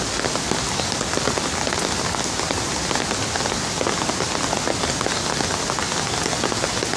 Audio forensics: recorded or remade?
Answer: recorded